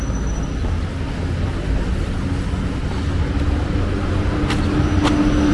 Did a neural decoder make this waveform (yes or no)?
no